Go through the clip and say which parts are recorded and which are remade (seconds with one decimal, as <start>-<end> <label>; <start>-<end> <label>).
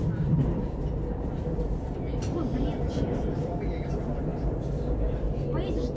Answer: 0.0-3.6 remade; 3.6-4.3 recorded; 4.3-4.8 remade; 4.8-6.0 recorded